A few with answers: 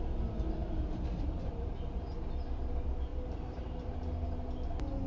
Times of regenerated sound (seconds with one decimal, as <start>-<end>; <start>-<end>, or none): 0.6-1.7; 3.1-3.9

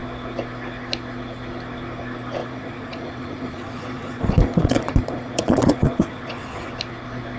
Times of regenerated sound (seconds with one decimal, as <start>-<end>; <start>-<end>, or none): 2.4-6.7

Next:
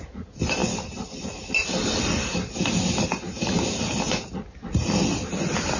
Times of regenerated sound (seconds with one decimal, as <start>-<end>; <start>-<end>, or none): none

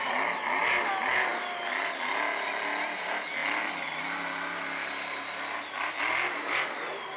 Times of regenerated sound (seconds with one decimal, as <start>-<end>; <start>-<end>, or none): none